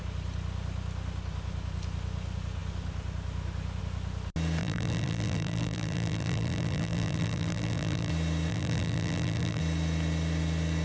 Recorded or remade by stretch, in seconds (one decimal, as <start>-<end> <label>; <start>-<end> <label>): 0.0-4.6 recorded; 4.6-8.1 remade; 8.1-8.5 recorded; 8.5-9.6 remade; 9.6-10.8 recorded

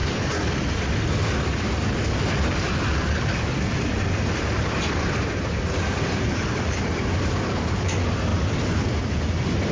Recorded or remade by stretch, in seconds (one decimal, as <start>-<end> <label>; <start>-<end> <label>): 0.0-3.1 recorded; 3.1-9.7 remade

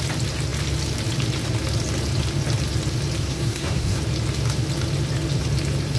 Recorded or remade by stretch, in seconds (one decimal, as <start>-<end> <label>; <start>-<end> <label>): 0.0-3.2 recorded; 3.2-4.0 remade; 4.0-6.0 recorded

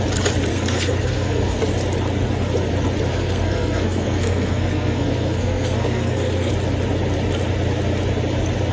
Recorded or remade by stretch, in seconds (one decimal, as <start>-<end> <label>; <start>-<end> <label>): 0.0-0.5 recorded; 0.5-1.6 remade; 1.6-3.1 recorded; 3.1-6.5 remade; 6.5-8.7 recorded

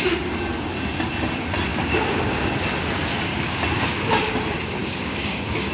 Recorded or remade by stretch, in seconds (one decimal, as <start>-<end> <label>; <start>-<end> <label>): 0.0-1.7 recorded; 1.7-2.5 remade; 2.5-3.3 recorded; 3.3-3.8 remade; 3.8-4.8 recorded; 4.8-5.7 remade

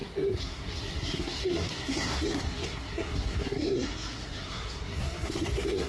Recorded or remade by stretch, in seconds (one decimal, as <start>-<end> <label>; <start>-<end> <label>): 0.0-5.9 remade